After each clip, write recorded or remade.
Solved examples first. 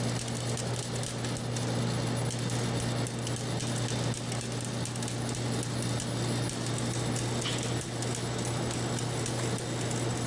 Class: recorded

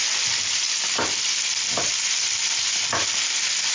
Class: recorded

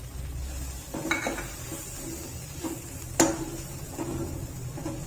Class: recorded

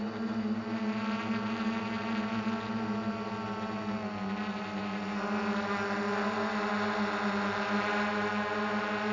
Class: recorded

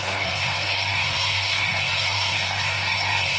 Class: remade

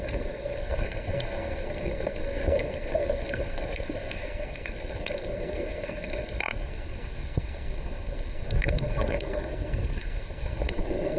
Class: remade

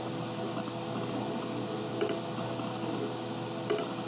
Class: recorded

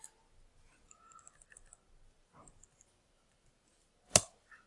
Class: recorded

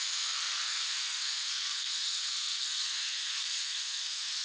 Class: remade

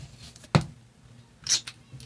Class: recorded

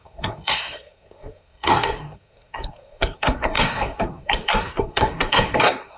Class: remade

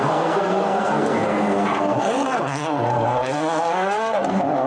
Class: remade